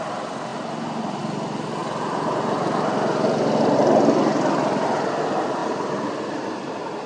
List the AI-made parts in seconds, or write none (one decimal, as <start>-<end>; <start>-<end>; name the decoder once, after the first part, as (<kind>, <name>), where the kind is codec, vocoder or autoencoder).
none